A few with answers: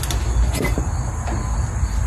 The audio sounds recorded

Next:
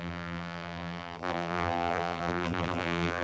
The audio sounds remade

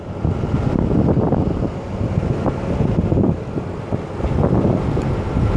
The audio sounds remade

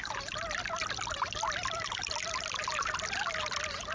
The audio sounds recorded